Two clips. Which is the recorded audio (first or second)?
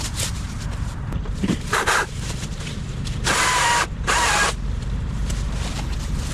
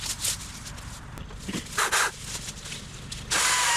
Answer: second